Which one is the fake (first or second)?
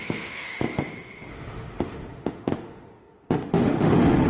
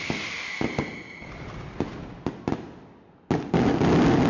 first